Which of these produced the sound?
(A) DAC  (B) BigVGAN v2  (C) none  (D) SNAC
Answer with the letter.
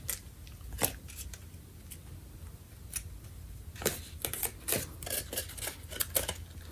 C